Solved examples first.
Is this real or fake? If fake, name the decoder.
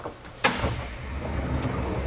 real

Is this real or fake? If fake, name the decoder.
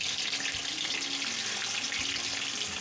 real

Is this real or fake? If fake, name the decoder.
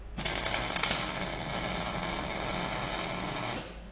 real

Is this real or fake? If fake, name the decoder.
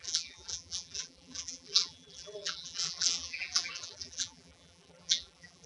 fake, vocoder, BigVGAN v2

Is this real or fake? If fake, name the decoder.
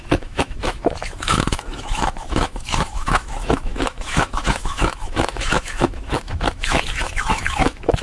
fake, autoencoder, DAC-VAE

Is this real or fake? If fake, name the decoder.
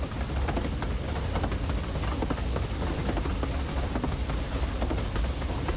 real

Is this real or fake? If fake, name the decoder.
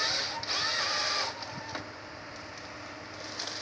real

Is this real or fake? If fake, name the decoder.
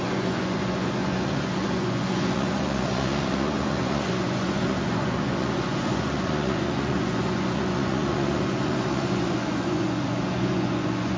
fake, vocoder, Vocos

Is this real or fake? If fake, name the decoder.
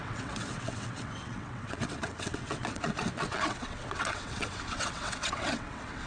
fake, vocoder, WaveNeXt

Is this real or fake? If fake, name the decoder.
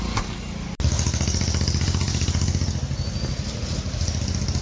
real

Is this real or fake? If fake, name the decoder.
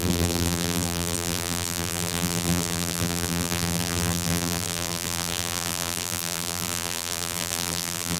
fake, vocoder, BigVGAN v2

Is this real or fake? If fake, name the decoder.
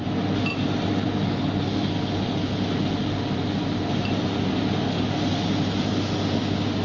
real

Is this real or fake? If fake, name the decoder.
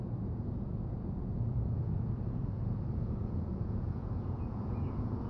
fake, vocoder, Vocos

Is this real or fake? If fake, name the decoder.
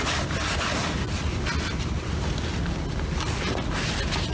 real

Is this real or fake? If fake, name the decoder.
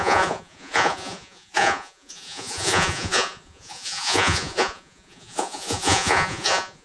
fake, vocoder, Vocos